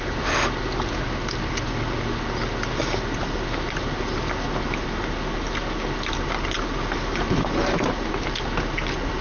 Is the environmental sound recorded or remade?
recorded